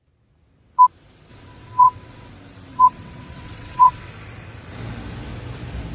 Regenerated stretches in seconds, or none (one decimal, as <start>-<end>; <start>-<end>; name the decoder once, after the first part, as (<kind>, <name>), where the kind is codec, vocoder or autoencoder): 1.3-2.3 (vocoder, WaveNeXt); 2.7-4.1